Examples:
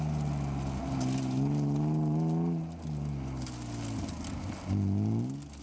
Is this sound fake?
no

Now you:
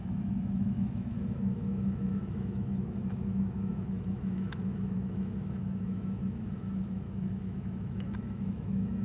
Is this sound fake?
yes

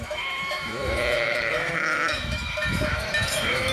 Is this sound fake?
yes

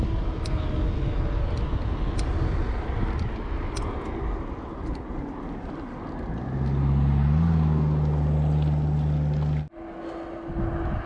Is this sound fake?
no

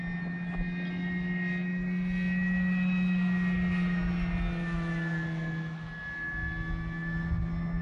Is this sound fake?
no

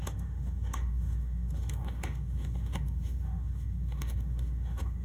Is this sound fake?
yes